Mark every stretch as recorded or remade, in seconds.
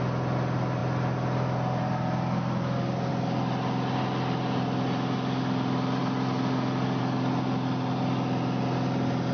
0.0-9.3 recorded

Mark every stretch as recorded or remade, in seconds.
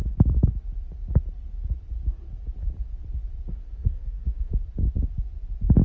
0.0-3.5 recorded; 3.5-4.5 remade; 4.5-5.8 recorded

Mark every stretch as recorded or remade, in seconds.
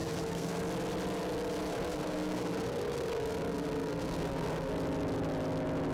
0.0-0.6 remade; 0.6-1.7 recorded; 1.7-4.7 remade; 4.7-5.9 recorded